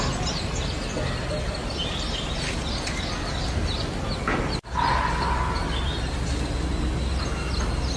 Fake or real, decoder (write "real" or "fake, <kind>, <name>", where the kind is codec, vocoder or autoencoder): real